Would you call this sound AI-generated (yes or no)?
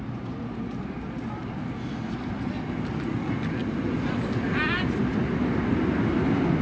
no